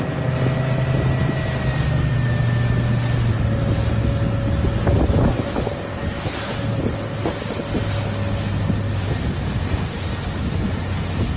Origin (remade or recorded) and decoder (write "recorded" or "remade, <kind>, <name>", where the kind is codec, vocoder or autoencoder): recorded